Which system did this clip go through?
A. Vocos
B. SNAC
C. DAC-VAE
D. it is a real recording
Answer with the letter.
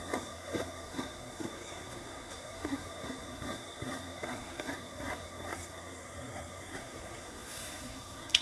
B